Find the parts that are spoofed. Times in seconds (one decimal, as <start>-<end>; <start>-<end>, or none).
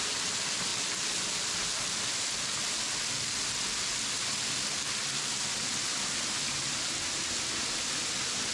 none